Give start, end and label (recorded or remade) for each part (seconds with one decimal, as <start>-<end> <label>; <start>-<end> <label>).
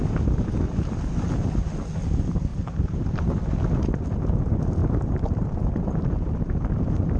0.0-2.5 recorded; 2.5-3.2 remade; 3.2-4.8 recorded; 4.8-6.7 remade; 6.7-7.2 recorded